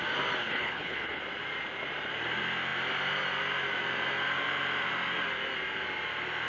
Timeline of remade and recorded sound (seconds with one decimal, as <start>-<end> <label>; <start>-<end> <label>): 0.0-0.4 recorded; 0.4-1.2 remade; 1.2-6.5 recorded